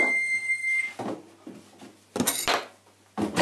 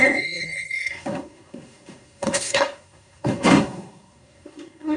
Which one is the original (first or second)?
first